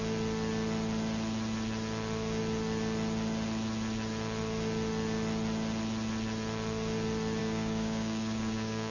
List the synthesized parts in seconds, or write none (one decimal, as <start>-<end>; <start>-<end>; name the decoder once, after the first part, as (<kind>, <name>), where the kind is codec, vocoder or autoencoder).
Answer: 7.4-8.9 (codec, DAC)